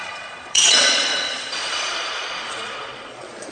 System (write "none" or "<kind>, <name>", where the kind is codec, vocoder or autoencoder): vocoder, Vocos